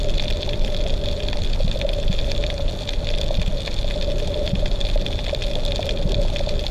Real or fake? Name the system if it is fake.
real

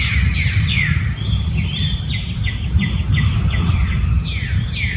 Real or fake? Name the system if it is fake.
real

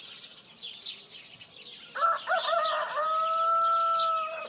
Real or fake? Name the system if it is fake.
real